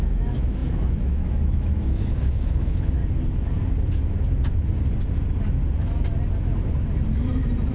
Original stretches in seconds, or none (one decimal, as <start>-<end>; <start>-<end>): 3.0-7.7